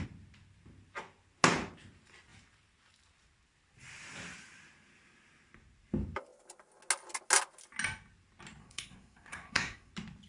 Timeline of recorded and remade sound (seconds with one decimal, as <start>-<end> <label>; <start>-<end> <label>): 0.0-8.6 recorded; 8.6-9.9 remade; 9.9-10.3 recorded